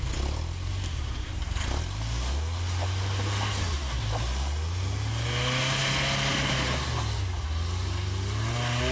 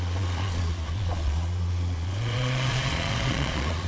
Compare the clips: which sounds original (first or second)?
first